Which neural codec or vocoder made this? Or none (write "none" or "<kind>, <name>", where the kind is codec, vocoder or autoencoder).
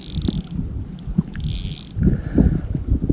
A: none